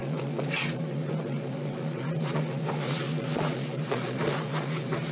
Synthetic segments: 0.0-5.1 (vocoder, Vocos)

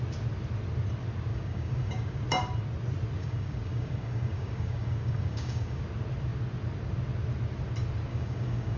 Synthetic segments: 1.3-2.2 (codec, DAC); 3.2-5.8; 8.1-8.8

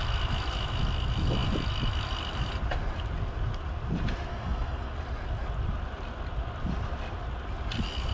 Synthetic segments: 4.3-4.9 (codec, SNAC)